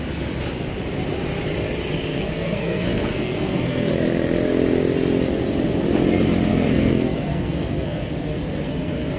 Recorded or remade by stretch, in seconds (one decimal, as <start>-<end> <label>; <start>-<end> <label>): 0.0-2.1 recorded; 2.1-3.9 remade; 3.9-6.5 recorded; 6.5-9.2 remade